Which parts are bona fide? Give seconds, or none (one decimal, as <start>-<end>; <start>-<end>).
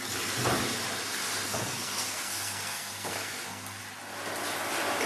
0.0-1.4; 3.8-5.1